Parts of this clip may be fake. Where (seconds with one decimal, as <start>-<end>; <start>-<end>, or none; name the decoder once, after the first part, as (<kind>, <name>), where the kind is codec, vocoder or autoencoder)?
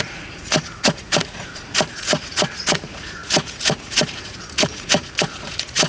0.0-5.9 (vocoder, Vocos)